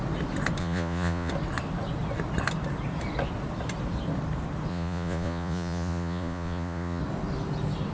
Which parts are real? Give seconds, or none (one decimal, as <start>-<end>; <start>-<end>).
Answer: 0.0-0.6; 1.3-4.7; 7.0-7.9

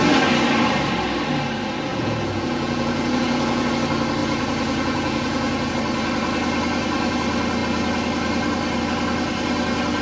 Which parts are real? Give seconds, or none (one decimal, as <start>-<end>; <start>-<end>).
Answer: 0.0-1.9; 3.7-4.2; 5.7-10.0

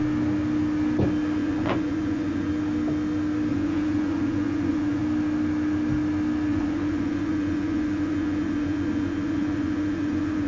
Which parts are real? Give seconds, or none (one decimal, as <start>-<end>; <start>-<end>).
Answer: 0.0-1.4; 2.5-3.5; 5.0-6.5

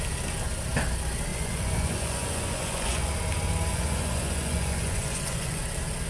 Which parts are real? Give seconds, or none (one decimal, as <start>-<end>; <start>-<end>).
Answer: 0.0-1.3; 3.1-3.7; 5.6-6.1

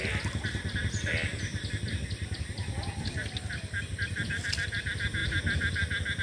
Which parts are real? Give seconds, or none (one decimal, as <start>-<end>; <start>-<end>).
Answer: 0.0-6.2

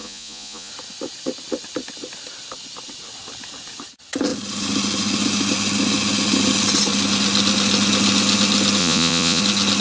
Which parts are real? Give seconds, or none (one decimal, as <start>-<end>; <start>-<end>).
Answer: 0.7-8.8; 9.4-9.8

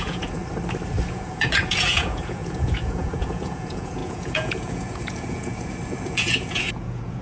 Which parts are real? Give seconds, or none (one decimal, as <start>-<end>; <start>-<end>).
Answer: 0.4-1.1